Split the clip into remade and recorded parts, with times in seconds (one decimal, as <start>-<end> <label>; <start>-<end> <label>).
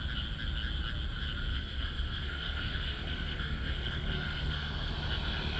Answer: 0.0-1.5 recorded; 1.5-4.9 remade; 4.9-5.6 recorded